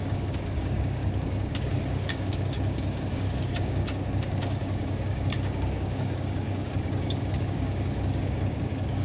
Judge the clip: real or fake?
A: fake